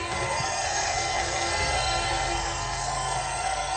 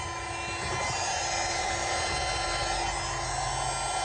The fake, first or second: first